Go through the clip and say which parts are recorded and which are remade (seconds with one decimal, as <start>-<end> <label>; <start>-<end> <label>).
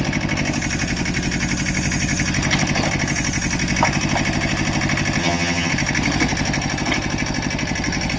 0.0-5.2 recorded; 5.2-5.7 remade; 5.7-8.2 recorded